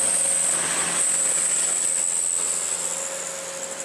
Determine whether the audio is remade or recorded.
recorded